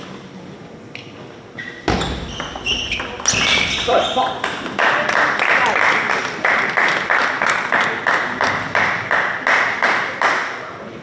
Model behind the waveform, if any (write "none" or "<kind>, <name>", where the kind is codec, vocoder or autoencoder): none